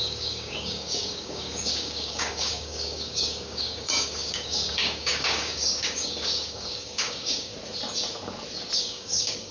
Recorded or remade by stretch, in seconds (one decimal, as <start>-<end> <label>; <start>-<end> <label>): 0.0-7.5 remade; 7.5-8.8 recorded; 8.8-9.5 remade